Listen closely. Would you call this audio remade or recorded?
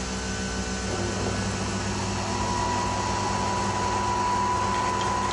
recorded